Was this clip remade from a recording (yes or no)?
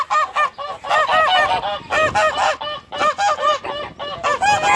no